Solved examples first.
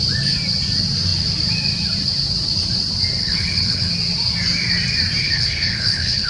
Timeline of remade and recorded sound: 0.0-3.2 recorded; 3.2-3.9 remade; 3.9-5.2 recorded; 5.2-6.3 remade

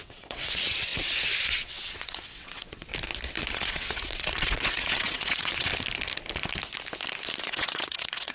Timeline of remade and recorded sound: 0.0-2.9 remade; 2.9-3.5 recorded; 3.5-5.7 remade; 5.7-7.4 recorded; 7.4-8.3 remade

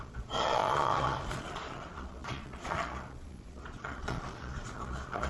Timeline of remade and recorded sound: 0.0-5.3 remade